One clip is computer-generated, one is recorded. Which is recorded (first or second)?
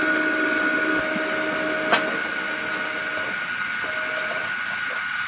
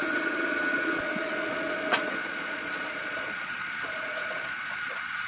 first